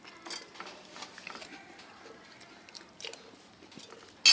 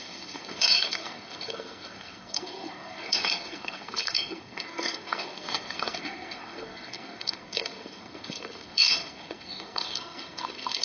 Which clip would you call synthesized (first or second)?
second